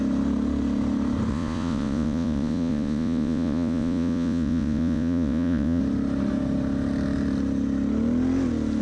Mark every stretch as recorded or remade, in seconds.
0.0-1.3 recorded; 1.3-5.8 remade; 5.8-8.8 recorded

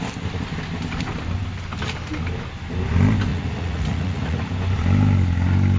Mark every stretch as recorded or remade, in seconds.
0.0-3.3 recorded; 3.3-4.5 remade; 4.5-5.8 recorded

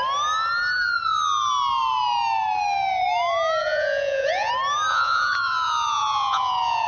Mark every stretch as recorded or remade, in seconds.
0.0-3.6 recorded; 3.6-4.5 remade; 4.5-4.9 recorded; 4.9-6.9 remade

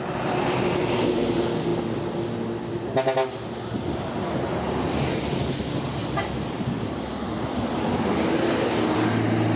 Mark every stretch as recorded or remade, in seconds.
0.0-9.6 recorded